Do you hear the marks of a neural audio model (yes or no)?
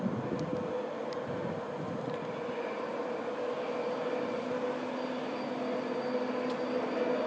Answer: no